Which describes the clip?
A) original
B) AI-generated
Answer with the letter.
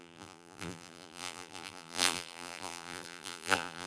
B